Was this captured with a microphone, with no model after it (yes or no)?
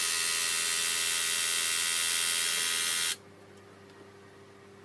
yes